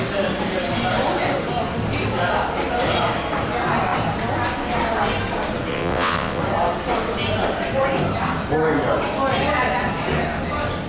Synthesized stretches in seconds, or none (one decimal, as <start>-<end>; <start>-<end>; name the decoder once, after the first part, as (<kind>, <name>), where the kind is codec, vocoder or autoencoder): 5.7-6.4 (vocoder, WaveNeXt)

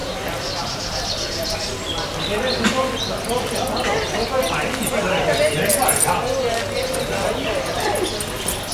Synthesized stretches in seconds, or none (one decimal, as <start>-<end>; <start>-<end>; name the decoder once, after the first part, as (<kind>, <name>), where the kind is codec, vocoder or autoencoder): none

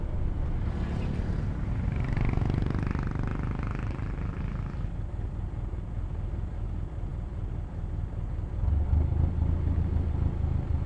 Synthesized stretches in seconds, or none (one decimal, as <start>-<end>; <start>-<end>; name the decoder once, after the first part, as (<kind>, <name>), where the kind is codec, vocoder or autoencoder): none

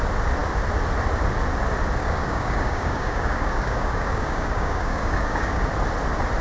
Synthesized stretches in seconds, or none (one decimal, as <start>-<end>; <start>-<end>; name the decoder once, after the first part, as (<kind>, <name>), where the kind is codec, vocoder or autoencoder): 2.0-5.7 (codec, DAC)